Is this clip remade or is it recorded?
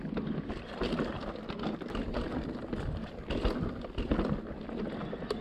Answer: recorded